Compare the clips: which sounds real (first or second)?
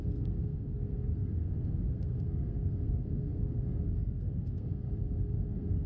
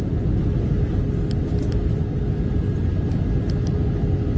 second